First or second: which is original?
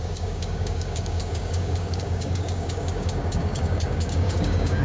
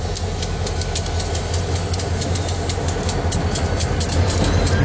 second